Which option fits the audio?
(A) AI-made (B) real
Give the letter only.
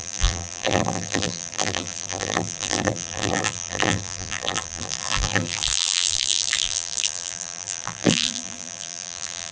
A